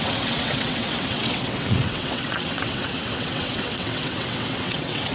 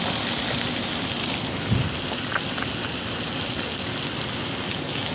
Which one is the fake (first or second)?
first